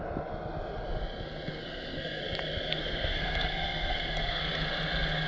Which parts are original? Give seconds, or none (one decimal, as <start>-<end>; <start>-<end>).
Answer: 0.0-1.5; 2.2-2.7; 4.4-5.3